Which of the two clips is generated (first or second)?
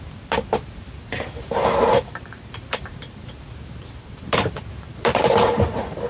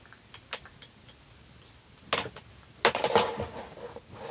first